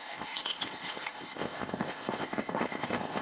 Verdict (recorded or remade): remade